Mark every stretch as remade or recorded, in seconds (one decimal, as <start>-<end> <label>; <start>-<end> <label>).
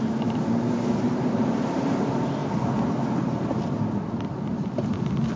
0.0-5.4 recorded